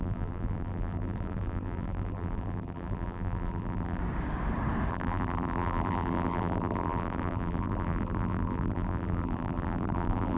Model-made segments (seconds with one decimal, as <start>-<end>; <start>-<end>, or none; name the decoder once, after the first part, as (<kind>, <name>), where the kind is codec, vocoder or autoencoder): 0.0-4.0 (vocoder, BigVGAN v2); 4.9-10.4